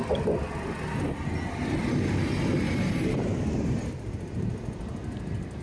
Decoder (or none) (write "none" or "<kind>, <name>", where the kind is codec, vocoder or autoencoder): none